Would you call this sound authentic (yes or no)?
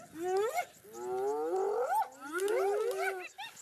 yes